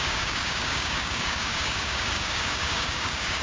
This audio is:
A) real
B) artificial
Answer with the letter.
B